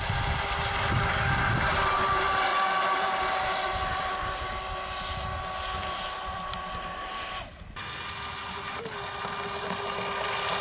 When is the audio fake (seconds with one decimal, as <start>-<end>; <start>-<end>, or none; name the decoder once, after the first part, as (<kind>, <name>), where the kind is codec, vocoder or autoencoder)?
2.5-4.4 (vocoder, BigVGAN v2); 5.8-6.7